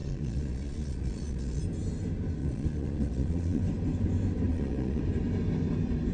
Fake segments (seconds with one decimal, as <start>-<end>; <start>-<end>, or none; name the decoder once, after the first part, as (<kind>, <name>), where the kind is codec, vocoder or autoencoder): 0.0-1.6 (vocoder, Vocos); 2.4-3.6; 4.5-5.0